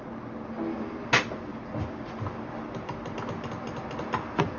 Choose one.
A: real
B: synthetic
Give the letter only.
A